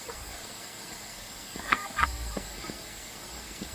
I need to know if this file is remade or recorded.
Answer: remade